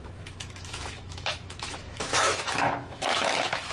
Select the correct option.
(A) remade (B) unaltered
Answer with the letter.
A